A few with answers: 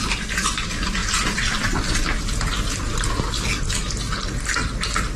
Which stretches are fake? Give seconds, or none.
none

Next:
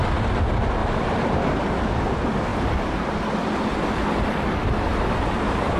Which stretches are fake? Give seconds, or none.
0.8-1.7 (vocoder, BigVGAN v2); 2.5-3.4

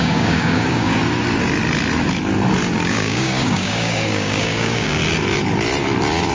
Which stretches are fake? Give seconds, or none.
0.0-1.0 (codec, DAC); 2.9-5.0

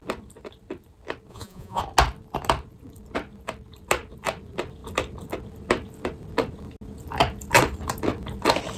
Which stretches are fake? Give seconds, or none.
1.3-1.8 (vocoder, Vocos)

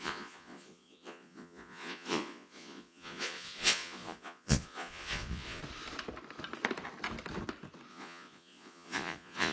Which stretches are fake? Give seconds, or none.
0.0-5.6 (vocoder, Vocos); 7.9-9.5

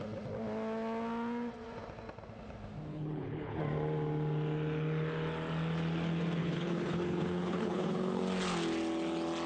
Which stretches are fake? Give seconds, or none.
2.9-3.6 (codec, HILCodec); 6.4-8.2

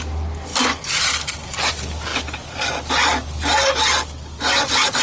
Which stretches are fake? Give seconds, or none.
none

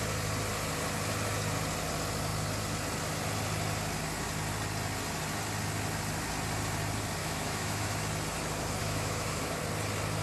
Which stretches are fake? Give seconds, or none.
7.2-8.0 (autoencoder, DAC-VAE); 8.8-9.6